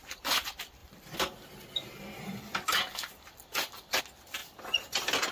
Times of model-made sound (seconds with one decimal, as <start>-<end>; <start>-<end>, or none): 0.8-4.0